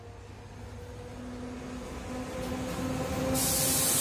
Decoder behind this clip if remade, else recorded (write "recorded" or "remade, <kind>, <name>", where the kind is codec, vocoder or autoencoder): recorded